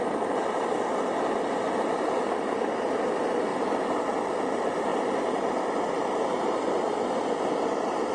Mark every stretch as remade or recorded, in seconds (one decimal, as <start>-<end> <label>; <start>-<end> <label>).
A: 0.0-8.1 recorded